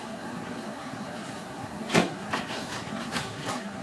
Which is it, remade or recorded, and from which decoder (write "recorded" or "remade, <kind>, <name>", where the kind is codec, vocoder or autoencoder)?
remade, codec, SNAC